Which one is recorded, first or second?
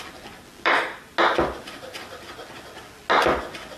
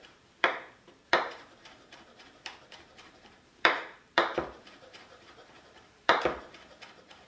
first